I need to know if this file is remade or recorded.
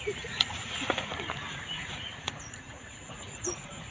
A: remade